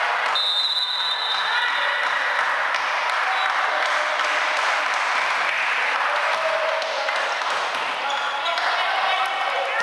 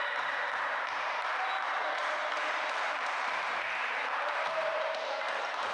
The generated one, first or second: second